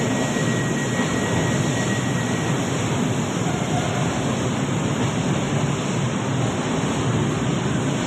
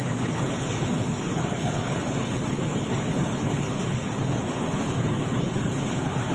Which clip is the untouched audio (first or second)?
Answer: first